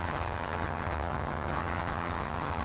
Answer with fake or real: fake